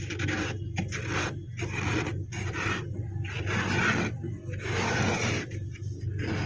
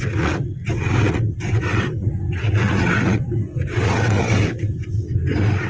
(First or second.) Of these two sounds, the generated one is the second